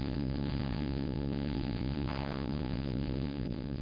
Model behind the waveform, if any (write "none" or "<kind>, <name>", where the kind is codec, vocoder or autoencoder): vocoder, WaveNeXt